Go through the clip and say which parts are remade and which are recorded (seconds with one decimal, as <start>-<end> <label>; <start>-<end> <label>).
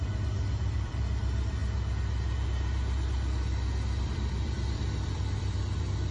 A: 0.0-1.6 remade; 1.6-4.0 recorded; 4.0-6.1 remade